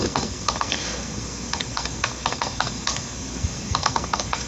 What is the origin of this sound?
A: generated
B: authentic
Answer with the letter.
A